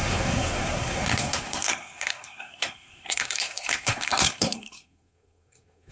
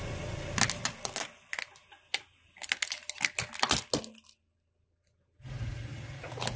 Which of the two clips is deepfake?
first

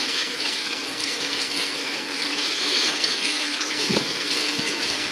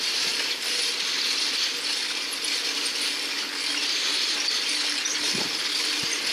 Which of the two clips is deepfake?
first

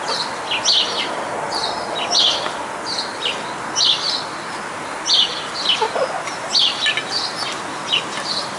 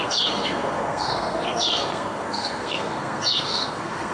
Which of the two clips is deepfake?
second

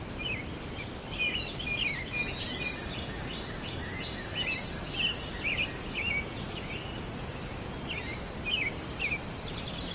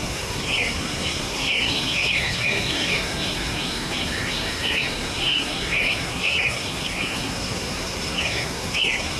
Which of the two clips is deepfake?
second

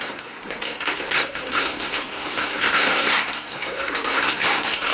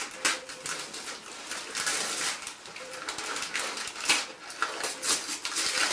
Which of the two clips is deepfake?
first